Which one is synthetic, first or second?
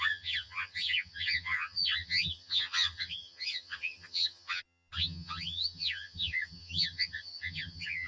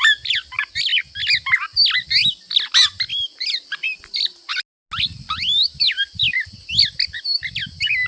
first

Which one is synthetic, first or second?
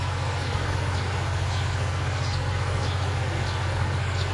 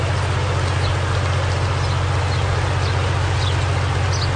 first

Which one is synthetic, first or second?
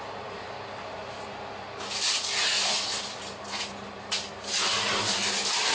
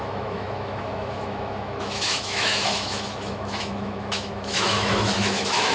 second